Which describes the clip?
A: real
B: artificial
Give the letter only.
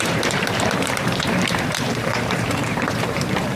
B